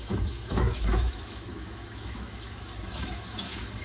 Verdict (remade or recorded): remade